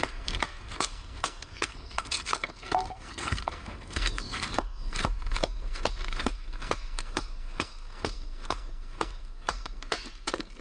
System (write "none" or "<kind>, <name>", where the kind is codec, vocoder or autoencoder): codec, SNAC